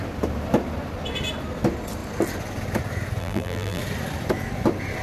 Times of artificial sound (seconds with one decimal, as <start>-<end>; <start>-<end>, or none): 3.2-3.8